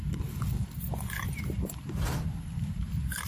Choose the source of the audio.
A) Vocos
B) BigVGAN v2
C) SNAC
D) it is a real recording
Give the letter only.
D